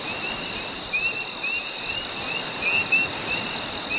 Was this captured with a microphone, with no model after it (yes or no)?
yes